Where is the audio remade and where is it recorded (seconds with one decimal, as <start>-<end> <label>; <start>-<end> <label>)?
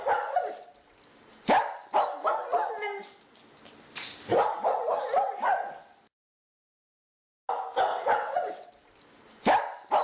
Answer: 0.0-7.9 recorded; 7.9-8.7 remade; 8.7-10.0 recorded